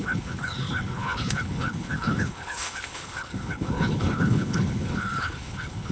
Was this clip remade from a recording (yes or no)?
yes